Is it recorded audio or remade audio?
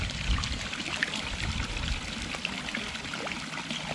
recorded